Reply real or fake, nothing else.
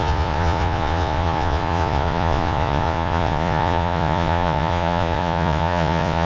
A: fake